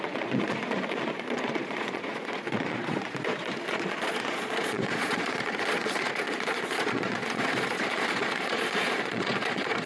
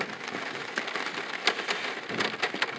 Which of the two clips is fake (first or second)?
first